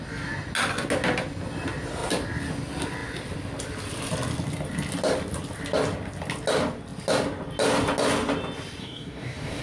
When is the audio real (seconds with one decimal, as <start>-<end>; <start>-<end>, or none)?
0.0-8.8